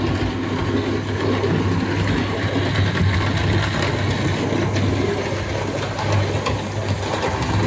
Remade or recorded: recorded